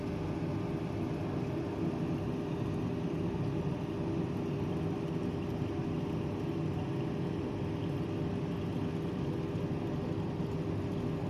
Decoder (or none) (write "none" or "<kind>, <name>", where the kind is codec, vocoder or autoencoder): none